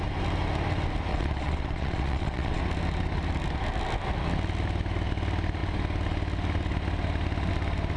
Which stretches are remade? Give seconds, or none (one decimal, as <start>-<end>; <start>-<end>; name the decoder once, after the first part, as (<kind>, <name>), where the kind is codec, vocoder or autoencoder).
1.1-2.6 (vocoder, WaveNeXt)